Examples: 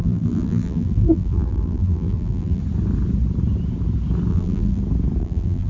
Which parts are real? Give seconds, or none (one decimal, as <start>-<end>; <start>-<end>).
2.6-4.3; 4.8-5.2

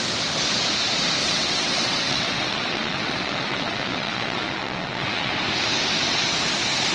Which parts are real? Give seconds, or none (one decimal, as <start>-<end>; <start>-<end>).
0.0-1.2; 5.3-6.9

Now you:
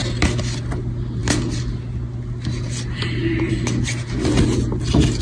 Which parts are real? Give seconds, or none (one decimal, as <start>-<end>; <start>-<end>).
0.0-5.2

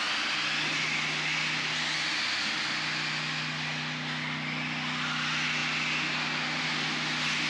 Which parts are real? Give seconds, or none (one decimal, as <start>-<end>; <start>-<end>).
0.0-7.5